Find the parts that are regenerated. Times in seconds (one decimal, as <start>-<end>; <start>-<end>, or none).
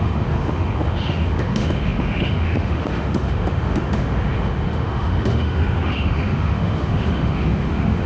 0.0-8.1